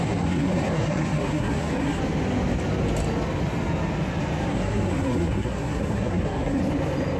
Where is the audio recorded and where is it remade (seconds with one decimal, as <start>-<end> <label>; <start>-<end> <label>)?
0.0-2.0 remade; 2.0-4.5 recorded; 4.5-6.6 remade; 6.6-7.2 recorded